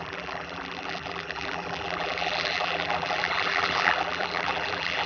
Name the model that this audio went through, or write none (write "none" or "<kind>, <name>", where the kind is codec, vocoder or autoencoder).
vocoder, BigVGAN v2